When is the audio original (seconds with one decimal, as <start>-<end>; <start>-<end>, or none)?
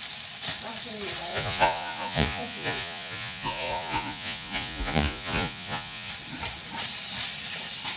0.0-1.3; 6.1-8.0